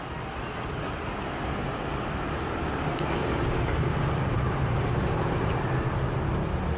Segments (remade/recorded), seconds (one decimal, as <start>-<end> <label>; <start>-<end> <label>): 0.0-1.6 recorded; 1.6-5.7 remade; 5.7-6.8 recorded